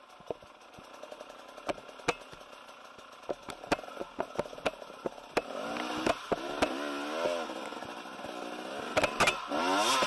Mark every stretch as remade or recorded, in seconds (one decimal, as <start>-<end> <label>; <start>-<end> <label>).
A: 0.0-10.1 recorded